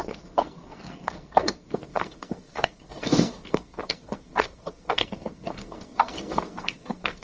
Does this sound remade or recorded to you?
remade